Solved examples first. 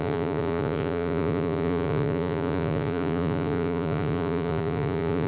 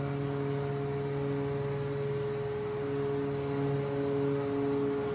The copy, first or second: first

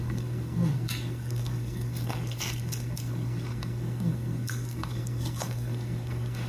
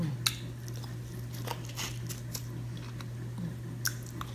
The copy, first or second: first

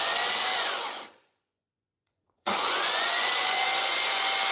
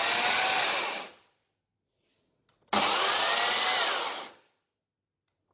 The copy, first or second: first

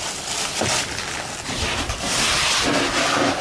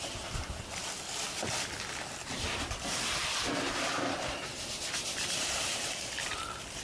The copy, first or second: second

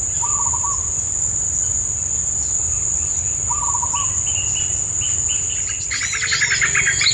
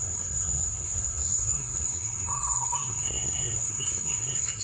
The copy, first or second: second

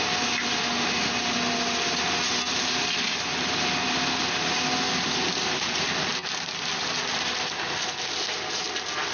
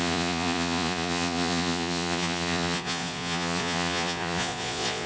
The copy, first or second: second